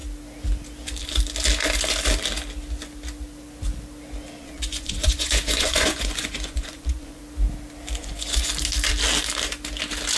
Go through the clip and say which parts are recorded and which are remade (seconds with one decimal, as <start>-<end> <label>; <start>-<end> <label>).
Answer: 0.0-4.4 recorded; 4.4-7.2 remade; 7.2-8.0 recorded; 8.0-8.5 remade; 8.5-10.2 recorded